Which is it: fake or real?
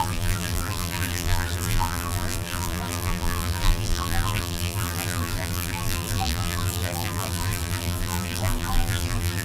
fake